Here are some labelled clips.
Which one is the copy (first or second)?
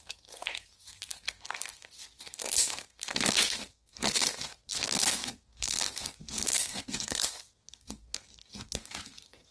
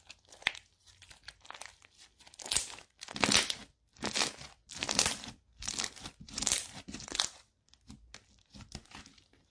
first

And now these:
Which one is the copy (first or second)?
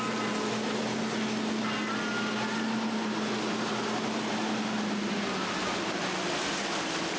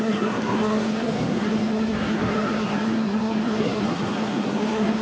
second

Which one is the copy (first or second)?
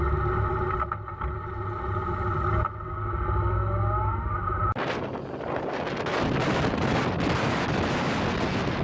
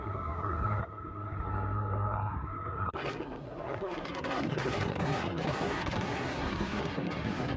second